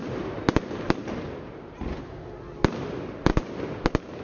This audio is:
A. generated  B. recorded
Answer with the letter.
B